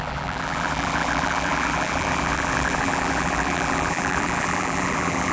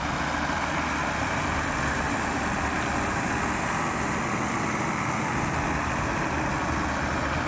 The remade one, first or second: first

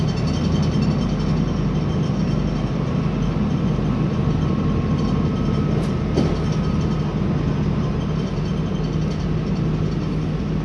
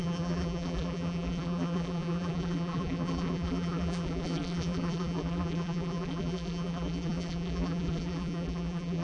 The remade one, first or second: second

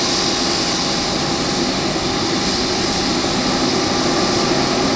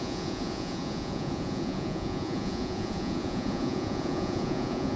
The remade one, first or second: second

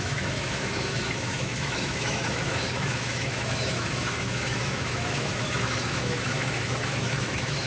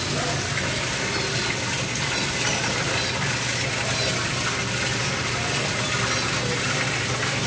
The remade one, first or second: first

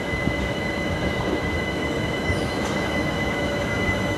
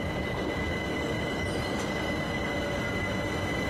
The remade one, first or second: first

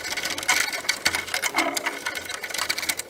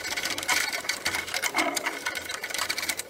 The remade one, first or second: second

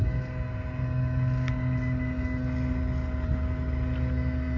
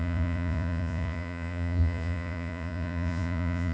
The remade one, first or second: second